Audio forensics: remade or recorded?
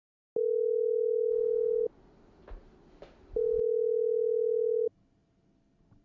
recorded